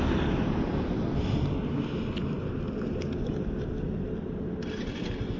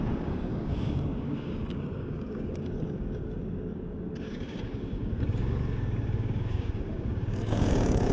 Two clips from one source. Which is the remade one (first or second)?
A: second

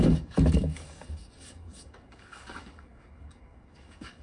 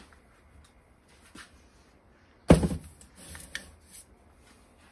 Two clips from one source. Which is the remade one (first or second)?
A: first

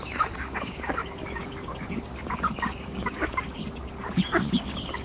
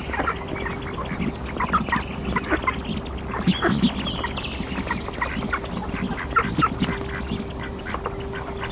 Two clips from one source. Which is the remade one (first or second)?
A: first